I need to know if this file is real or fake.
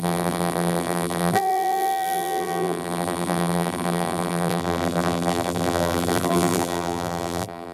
fake